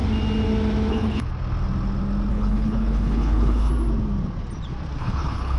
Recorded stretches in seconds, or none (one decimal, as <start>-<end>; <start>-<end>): 0.0-0.9; 1.3-2.3; 3.7-5.0